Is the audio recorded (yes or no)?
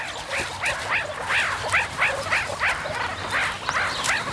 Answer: yes